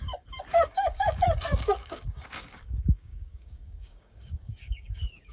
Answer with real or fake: fake